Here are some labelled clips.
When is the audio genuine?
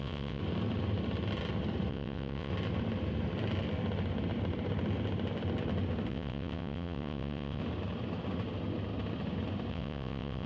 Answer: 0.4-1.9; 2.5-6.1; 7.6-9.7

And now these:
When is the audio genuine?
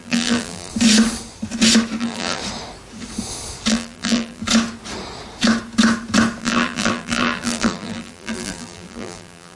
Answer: 0.7-2.0; 2.4-3.7; 4.4-6.4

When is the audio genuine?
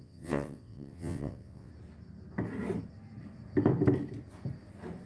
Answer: 1.7-5.1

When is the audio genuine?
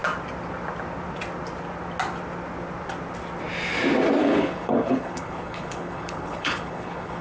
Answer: 0.0-4.2